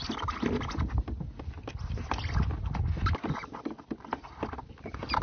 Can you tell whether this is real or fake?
real